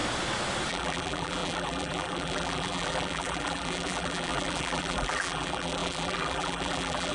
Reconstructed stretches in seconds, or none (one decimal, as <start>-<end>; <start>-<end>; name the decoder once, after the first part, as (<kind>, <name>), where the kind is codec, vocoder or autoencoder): 0.7-7.1 (vocoder, BigVGAN v2)